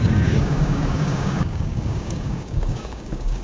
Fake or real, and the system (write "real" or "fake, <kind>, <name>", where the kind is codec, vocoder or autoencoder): fake, codec, DAC